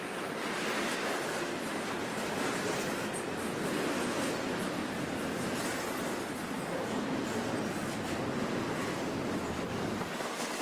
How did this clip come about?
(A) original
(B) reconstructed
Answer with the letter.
A